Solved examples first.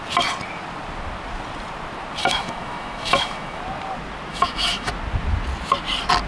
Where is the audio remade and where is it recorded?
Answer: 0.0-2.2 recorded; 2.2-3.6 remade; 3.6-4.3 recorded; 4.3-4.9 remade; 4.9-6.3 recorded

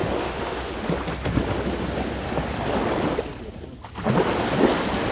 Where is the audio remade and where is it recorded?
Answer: 0.0-0.7 remade; 0.7-5.1 recorded

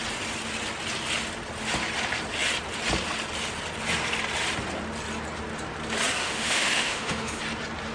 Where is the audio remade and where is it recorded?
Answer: 0.0-6.2 recorded; 6.2-7.4 remade; 7.4-7.9 recorded